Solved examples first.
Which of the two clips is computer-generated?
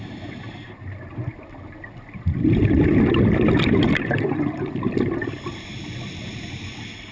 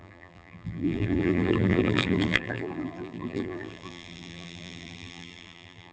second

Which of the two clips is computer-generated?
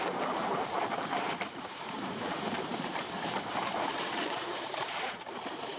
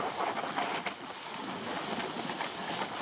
first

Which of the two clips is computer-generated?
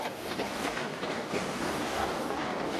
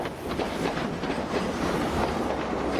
first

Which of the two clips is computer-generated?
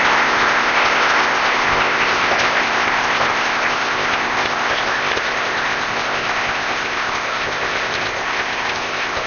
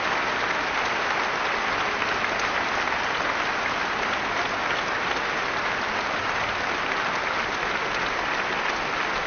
first